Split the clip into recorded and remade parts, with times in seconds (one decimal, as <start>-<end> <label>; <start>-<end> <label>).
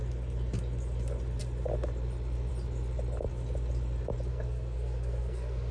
0.0-4.3 recorded; 4.3-5.7 remade